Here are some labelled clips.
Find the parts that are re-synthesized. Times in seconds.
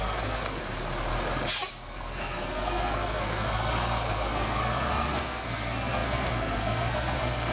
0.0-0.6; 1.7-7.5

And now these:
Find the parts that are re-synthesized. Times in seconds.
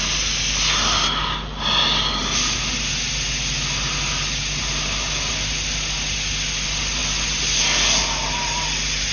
none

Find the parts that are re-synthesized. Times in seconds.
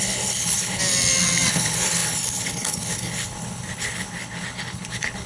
0.0-0.8; 1.5-5.3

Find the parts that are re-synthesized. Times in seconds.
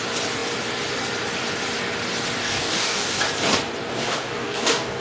2.4-3.2; 3.9-5.0